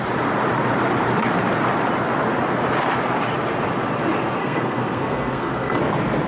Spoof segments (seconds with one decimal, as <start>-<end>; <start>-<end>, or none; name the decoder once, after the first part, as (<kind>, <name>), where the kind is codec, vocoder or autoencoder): 4.4-5.8 (codec, SNAC)